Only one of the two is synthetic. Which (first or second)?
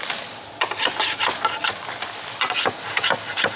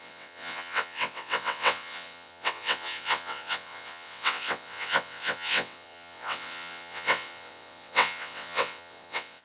second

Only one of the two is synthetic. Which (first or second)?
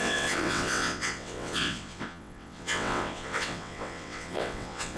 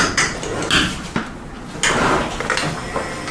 first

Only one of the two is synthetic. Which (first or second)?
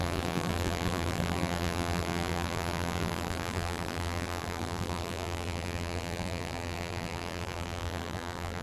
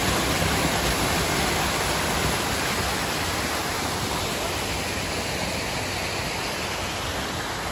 first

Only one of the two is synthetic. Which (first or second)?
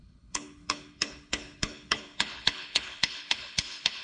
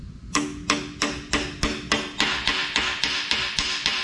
first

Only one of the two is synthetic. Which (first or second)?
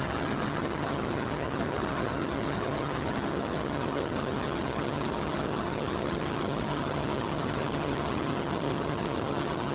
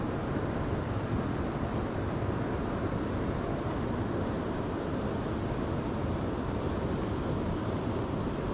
first